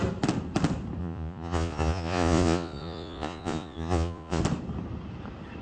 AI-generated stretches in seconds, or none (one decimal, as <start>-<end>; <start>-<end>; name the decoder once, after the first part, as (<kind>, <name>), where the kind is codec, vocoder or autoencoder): 1.0-4.4 (vocoder, Vocos)